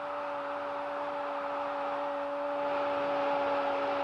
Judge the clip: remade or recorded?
recorded